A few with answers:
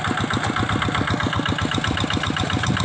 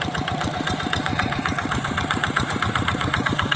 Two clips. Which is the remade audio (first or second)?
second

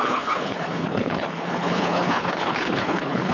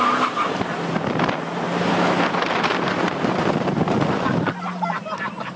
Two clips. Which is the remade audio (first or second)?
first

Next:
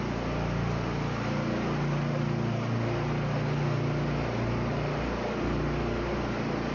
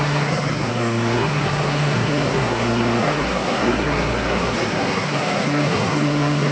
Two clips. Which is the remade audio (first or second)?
second